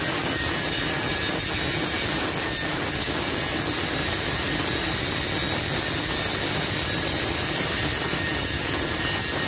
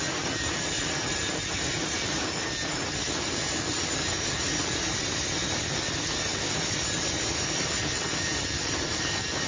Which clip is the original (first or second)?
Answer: first